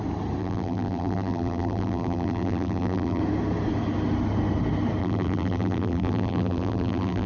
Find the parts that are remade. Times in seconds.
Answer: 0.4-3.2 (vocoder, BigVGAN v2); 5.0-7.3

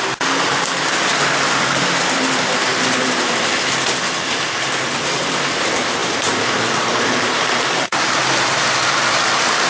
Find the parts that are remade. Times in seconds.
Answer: 6.0-8.2 (vocoder, BigVGAN v2)

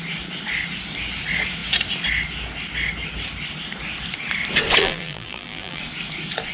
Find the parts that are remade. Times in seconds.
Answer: 4.8-5.8 (vocoder, BigVGAN v2)

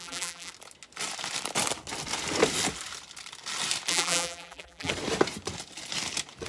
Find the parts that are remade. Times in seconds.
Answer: 0.0-0.5 (vocoder, BigVGAN v2); 3.9-4.9

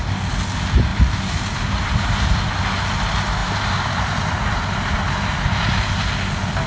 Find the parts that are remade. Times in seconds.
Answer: 0.9-2.5 (vocoder, BigVGAN v2); 3.4-6.0

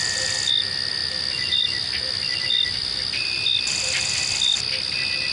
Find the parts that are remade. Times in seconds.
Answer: 1.0-4.2 (vocoder, BigVGAN v2)

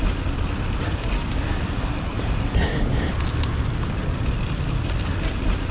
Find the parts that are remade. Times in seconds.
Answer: 2.1-3.1 (vocoder, BigVGAN v2)

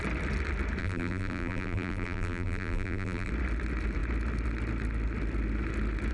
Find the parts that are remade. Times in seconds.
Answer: 0.8-3.3 (vocoder, BigVGAN v2)